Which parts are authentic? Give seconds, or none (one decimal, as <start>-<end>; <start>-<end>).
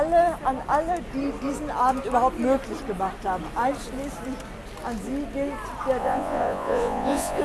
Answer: 0.0-6.0